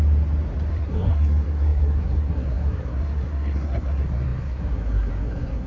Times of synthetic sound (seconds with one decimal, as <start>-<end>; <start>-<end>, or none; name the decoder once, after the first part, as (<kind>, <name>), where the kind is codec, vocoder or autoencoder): 0.7-5.7 (codec, SNAC)